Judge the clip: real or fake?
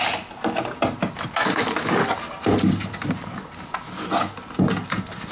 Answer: real